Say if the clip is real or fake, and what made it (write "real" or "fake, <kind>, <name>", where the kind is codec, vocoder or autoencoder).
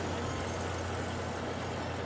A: real